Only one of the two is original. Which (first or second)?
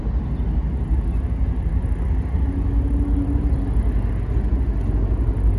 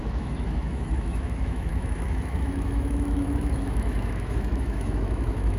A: first